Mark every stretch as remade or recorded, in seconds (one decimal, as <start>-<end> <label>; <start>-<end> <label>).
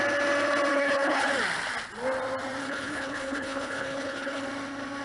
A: 0.0-0.7 recorded; 0.7-1.3 remade; 1.3-2.6 recorded; 2.6-4.4 remade; 4.4-5.0 recorded